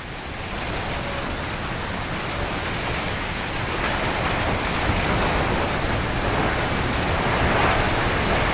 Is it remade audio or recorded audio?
recorded